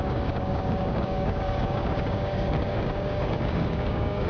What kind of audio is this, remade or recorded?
remade